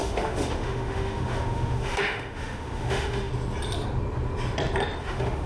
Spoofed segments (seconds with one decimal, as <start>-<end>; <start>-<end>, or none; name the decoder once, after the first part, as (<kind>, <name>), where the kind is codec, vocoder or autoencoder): 0.0-3.3 (autoencoder, DAC-VAE); 5.0-5.5